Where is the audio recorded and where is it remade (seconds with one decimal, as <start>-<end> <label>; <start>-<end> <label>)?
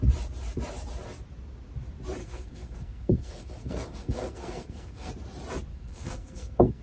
0.0-2.2 recorded; 2.2-5.1 remade; 5.1-5.7 recorded; 5.7-6.8 remade